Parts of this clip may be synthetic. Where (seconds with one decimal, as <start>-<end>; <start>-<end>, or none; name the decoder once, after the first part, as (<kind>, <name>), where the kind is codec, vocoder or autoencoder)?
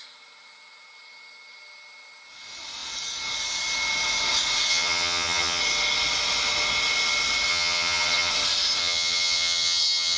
4.7-5.6 (vocoder, HiFi-GAN); 7.5-8.3; 8.8-10.2